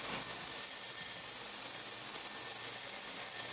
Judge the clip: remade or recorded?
recorded